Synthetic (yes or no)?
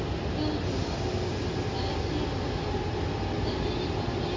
no